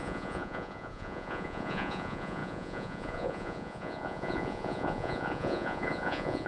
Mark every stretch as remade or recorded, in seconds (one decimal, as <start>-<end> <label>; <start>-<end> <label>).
0.0-6.5 remade